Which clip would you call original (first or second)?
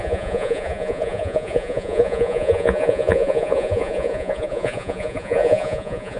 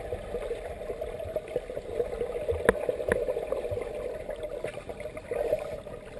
second